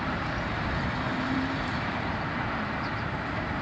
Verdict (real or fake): fake